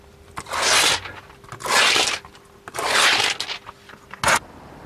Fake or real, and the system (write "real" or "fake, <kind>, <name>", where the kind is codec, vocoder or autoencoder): real